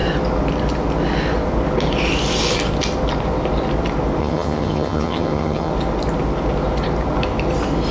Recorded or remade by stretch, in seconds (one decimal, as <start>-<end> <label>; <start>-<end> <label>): 0.0-4.2 recorded; 4.2-5.7 remade; 5.7-7.9 recorded